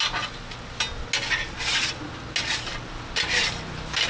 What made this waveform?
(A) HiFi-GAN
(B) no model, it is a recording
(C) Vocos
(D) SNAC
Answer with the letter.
B